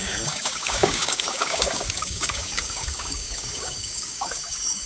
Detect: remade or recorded remade